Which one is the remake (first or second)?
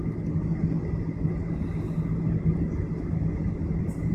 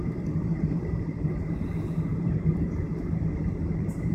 second